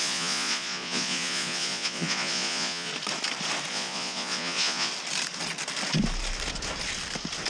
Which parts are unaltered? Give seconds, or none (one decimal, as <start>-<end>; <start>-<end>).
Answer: 2.9-3.7; 4.9-7.5